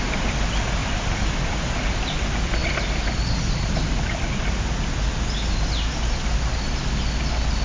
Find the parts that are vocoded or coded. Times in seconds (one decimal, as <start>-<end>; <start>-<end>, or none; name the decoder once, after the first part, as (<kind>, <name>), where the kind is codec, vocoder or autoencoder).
none